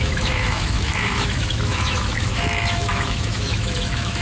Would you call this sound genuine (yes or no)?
no